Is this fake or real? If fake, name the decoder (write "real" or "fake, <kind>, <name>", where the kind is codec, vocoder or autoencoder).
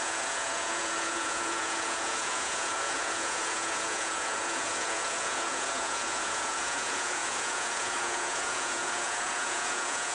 fake, vocoder, Vocos